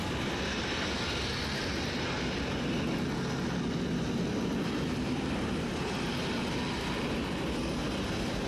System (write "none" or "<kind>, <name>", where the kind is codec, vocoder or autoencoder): none